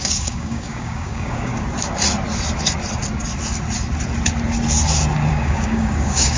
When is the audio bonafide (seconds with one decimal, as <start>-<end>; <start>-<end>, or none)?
1.5-5.3